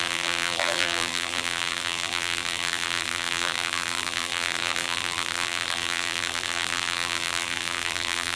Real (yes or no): no